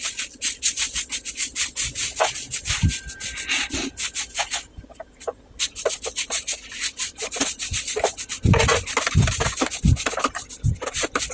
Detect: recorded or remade recorded